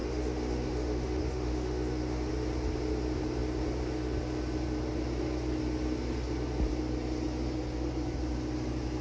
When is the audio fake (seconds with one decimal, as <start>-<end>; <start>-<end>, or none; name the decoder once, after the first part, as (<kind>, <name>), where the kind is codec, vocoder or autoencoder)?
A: 0.0-2.3 (autoencoder, DAC-VAE)